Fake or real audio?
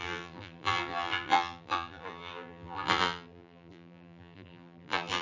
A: fake